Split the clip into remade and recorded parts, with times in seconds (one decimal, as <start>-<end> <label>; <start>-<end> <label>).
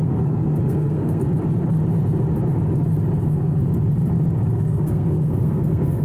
0.0-1.2 remade; 1.2-3.2 recorded; 3.2-3.6 remade; 3.6-4.5 recorded; 4.5-6.0 remade